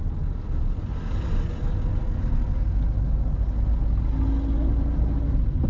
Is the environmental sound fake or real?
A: real